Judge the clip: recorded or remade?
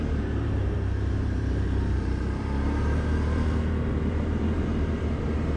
remade